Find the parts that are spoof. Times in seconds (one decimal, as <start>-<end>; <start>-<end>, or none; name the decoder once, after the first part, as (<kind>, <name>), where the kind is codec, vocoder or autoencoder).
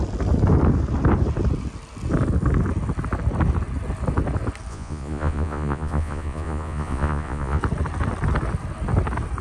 4.7-7.6 (vocoder, Vocos)